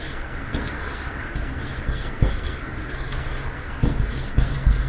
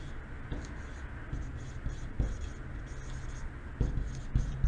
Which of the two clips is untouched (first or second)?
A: second